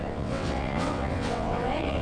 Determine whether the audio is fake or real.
fake